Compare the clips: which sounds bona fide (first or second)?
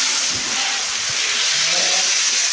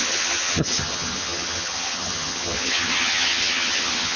first